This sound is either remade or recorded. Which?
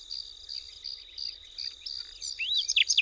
recorded